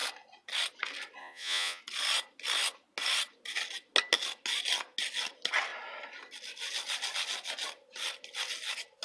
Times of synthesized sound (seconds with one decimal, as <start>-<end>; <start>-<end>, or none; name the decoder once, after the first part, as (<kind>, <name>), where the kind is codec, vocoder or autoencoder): 1.2-1.8 (vocoder, Vocos)